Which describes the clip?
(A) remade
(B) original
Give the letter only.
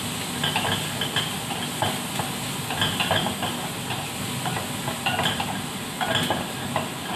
B